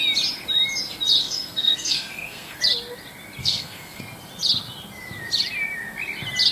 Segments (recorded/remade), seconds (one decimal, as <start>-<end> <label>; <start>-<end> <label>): 0.0-1.2 recorded; 1.2-2.6 remade; 2.6-3.4 recorded; 3.4-4.0 remade; 4.0-6.5 recorded